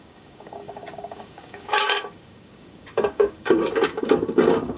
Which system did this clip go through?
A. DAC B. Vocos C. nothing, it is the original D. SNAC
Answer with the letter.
A